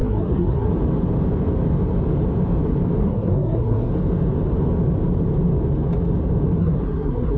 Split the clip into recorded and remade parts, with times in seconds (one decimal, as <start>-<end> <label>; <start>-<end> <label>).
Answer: 0.0-0.7 remade; 0.7-3.0 recorded; 3.0-3.9 remade; 3.9-6.6 recorded; 6.6-7.4 remade

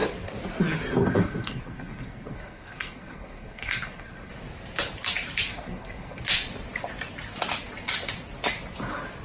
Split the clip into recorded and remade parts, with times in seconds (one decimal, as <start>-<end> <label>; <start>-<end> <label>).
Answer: 0.0-1.0 recorded; 1.0-4.3 remade; 4.3-5.5 recorded; 5.5-6.2 remade; 6.2-9.2 recorded

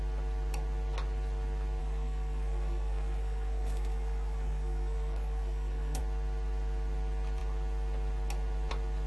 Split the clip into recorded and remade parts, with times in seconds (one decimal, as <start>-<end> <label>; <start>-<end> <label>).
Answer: 0.0-1.8 recorded; 1.8-6.0 remade; 6.0-9.1 recorded

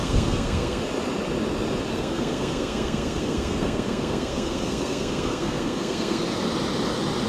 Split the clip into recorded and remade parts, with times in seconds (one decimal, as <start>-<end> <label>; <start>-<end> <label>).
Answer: 0.0-0.8 remade; 0.8-1.9 recorded; 1.9-6.2 remade; 6.2-7.3 recorded